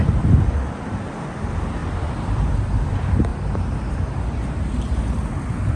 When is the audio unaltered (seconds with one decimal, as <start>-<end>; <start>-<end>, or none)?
0.0-1.8; 2.5-3.3; 5.3-5.8